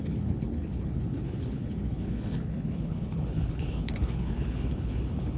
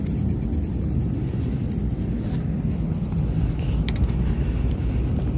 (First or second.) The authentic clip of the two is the second